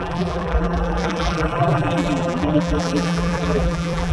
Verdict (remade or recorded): remade